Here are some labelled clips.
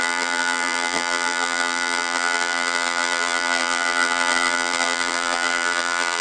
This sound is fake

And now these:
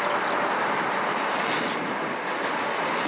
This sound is real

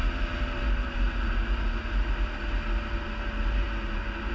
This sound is real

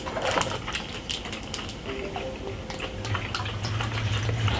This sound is real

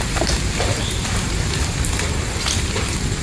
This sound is real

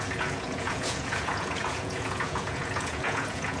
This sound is fake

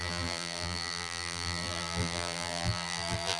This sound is fake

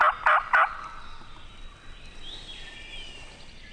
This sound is real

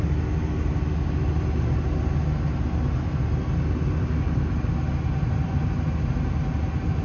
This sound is real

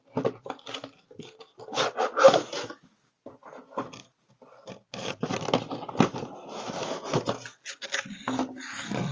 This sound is real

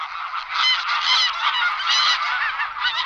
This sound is real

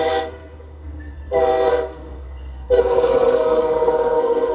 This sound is fake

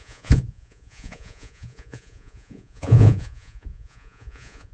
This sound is fake